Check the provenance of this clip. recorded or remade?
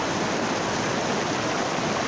recorded